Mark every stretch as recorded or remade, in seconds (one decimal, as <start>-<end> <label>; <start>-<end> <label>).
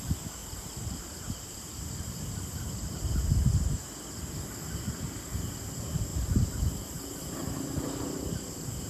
0.0-0.4 recorded; 0.4-3.1 remade; 3.1-6.1 recorded; 6.1-7.0 remade; 7.0-8.9 recorded